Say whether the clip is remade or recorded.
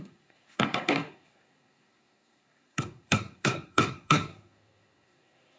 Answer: remade